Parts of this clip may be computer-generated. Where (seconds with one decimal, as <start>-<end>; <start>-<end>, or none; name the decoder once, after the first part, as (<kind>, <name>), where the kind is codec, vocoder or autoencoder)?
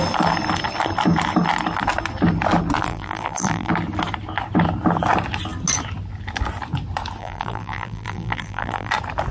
2.8-3.7 (vocoder, BigVGAN v2); 7.2-8.9